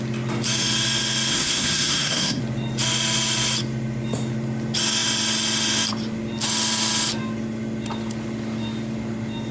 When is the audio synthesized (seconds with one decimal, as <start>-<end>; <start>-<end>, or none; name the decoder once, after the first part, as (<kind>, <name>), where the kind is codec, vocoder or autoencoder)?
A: 1.3-2.4 (codec, SNAC)